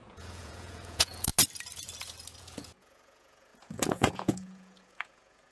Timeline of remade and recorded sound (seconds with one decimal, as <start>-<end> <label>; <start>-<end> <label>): 0.0-1.3 remade; 1.3-2.4 recorded; 2.4-5.5 remade